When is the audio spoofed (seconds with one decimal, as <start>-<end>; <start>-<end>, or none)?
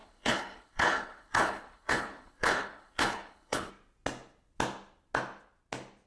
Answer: 0.0-3.7